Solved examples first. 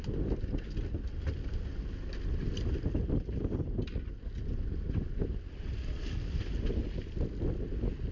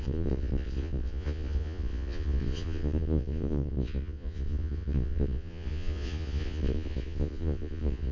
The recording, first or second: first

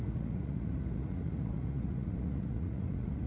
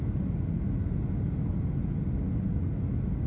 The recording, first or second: second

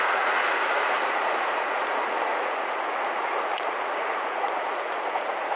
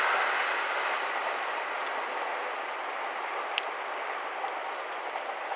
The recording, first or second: second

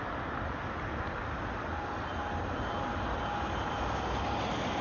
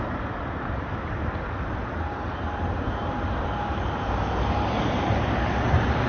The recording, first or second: first